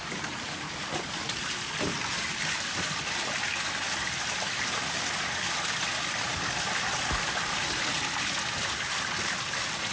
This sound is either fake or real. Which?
real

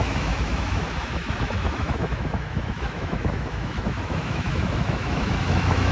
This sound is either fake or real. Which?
fake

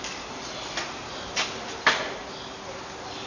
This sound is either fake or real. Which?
real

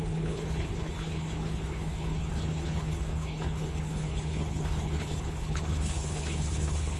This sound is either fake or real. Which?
fake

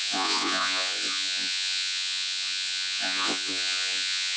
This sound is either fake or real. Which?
fake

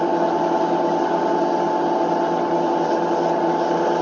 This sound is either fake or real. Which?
real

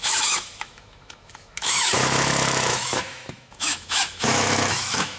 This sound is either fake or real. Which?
fake